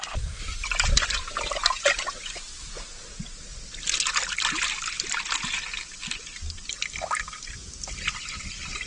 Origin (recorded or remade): recorded